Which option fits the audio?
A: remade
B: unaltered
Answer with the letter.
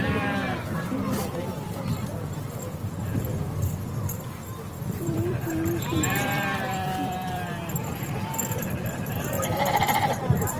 A